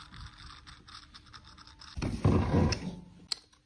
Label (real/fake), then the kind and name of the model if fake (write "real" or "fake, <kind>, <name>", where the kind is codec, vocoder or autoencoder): real